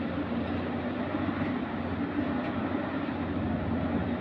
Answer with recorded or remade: recorded